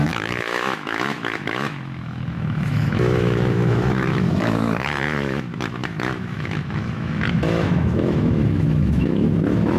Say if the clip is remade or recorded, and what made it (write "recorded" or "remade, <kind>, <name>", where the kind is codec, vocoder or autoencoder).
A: remade, autoencoder, DAC-VAE